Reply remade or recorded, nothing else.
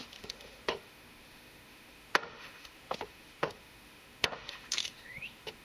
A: remade